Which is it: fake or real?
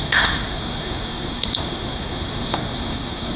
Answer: fake